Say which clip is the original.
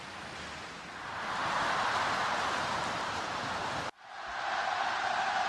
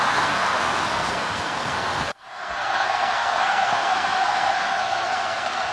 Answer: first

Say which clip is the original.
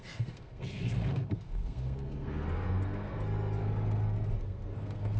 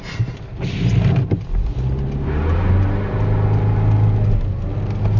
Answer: second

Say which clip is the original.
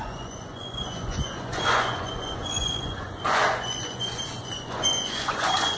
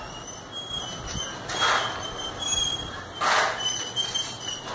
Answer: second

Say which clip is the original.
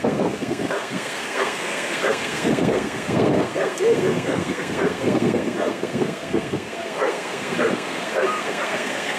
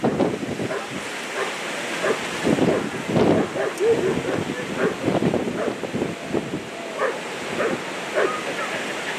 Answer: second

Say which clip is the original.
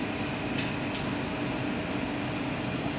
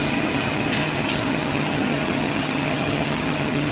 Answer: first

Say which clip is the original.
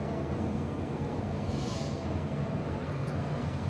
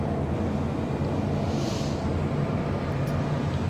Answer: second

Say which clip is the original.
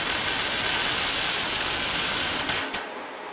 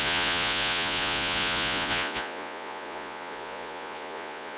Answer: first